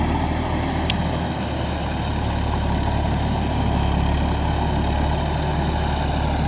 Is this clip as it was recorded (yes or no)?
yes